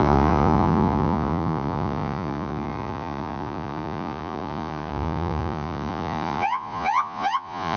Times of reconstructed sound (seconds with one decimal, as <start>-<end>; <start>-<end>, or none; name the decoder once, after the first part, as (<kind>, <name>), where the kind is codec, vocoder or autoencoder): 0.0-7.8 (vocoder, Vocos)